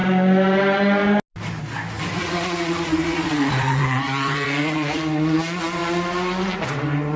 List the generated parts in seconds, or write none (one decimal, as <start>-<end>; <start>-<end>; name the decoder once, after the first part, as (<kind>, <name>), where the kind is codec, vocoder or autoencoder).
2.2-5.0 (vocoder, Vocos)